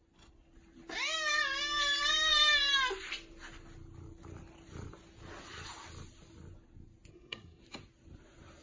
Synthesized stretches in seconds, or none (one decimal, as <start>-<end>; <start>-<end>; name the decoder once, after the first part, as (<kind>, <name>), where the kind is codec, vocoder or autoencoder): 7.1-7.6 (codec, SNAC)